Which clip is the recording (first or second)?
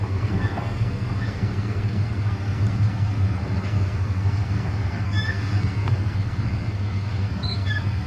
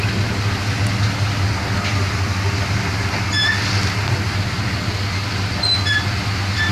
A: second